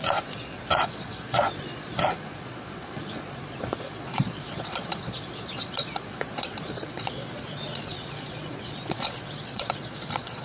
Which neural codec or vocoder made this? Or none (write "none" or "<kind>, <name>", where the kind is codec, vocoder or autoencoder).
vocoder, Vocos